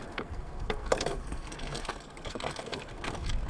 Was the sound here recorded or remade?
remade